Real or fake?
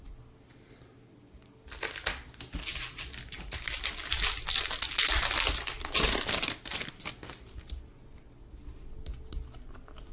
real